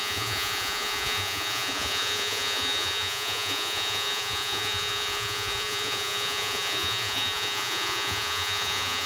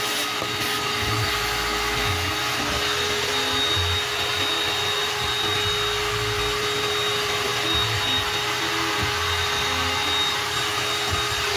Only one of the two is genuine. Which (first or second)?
second